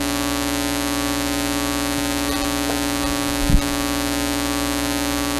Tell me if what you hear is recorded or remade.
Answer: recorded